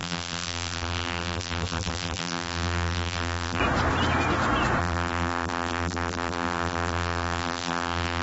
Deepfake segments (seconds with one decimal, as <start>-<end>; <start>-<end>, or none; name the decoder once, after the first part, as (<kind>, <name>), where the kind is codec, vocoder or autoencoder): 0.0-3.6 (vocoder, BigVGAN v2); 4.8-8.2